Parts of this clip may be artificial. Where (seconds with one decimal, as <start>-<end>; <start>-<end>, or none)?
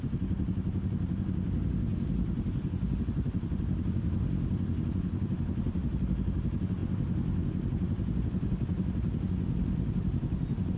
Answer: none